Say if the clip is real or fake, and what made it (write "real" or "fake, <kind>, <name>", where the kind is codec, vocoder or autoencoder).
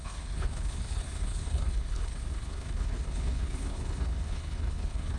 fake, codec, HILCodec